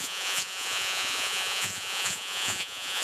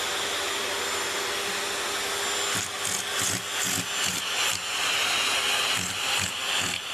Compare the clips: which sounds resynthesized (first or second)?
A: first